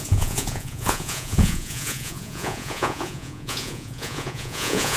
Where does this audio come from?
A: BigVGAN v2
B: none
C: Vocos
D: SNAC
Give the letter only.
C